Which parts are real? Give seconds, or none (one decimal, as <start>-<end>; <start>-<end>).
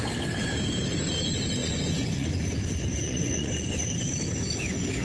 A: 0.0-1.6; 2.5-2.9; 3.7-5.0